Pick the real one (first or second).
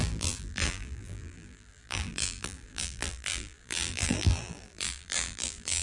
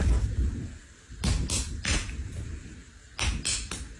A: second